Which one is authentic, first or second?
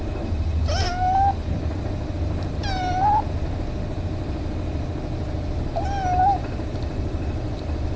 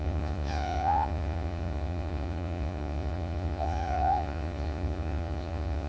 first